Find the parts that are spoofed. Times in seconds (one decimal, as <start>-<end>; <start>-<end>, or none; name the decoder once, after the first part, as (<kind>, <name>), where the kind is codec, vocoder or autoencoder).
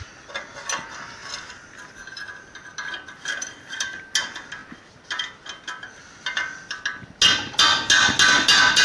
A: none